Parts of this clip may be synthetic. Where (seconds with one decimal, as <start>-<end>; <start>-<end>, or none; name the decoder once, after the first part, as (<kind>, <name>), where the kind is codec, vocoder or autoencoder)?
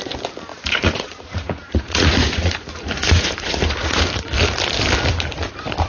0.5-4.0 (vocoder, Vocos)